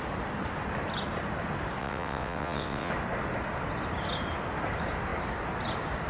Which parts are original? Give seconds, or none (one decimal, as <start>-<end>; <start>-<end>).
0.0-1.8; 2.9-6.1